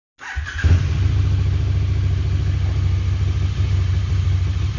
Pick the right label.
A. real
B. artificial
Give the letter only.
A